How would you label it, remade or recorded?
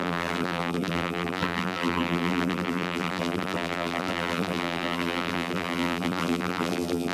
remade